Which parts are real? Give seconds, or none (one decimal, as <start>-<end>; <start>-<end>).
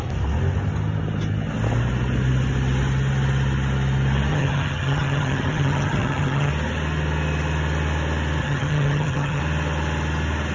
0.0-4.3; 6.5-8.4; 9.4-10.5